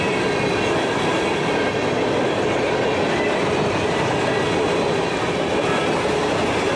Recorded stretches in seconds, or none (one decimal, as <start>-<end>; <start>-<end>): 0.0-1.1; 5.2-6.8